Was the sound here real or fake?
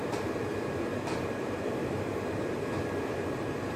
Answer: fake